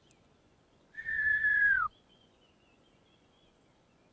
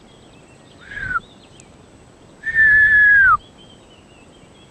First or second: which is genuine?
second